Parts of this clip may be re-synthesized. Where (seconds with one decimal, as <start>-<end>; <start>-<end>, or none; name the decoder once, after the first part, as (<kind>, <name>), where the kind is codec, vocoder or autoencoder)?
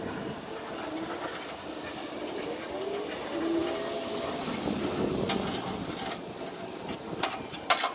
none